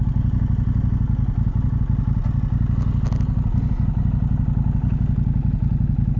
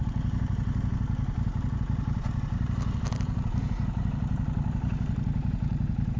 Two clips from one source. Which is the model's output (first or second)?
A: second